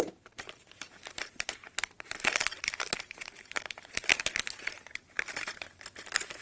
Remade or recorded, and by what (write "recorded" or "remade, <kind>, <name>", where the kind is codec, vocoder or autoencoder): remade, vocoder, BigVGAN v2